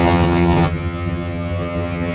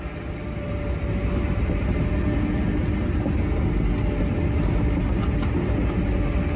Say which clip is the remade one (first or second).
first